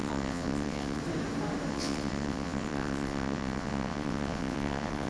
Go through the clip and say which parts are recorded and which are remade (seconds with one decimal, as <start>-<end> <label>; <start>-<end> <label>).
0.0-1.0 remade; 1.0-1.7 recorded; 1.7-5.1 remade